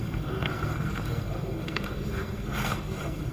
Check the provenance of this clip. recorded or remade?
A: remade